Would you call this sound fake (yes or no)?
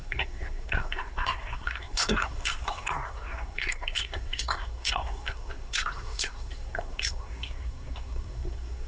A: yes